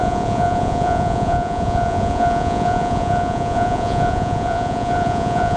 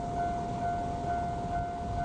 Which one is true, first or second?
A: second